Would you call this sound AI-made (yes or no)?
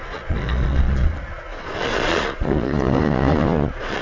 yes